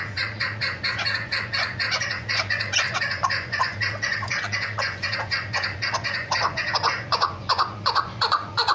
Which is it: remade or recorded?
remade